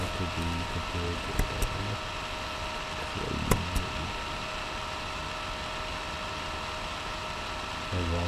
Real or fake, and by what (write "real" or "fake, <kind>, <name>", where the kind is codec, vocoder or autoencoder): real